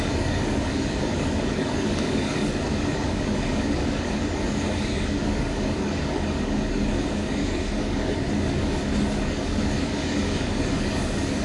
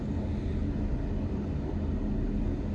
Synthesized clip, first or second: first